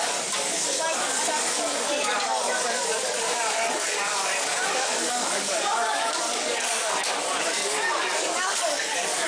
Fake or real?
fake